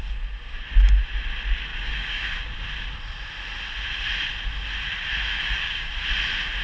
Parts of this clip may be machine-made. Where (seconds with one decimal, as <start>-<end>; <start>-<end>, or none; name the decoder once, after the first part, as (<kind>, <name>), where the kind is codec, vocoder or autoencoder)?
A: 1.7-2.4 (codec, DAC); 5.3-5.9